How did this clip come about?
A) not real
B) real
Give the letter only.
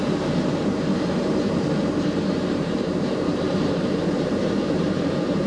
A